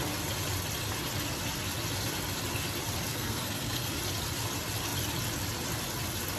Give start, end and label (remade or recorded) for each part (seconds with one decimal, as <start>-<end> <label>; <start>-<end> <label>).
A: 0.0-3.1 recorded; 3.1-4.0 remade; 4.0-6.4 recorded